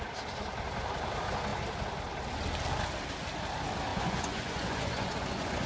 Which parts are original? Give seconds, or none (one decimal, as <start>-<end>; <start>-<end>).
0.0-3.9